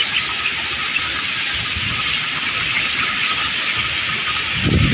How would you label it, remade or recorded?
recorded